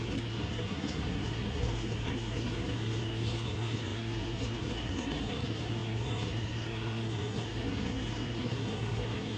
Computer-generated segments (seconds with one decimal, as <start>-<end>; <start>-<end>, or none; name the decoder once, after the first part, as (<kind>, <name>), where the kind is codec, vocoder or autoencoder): 0.0-9.4 (codec, SNAC)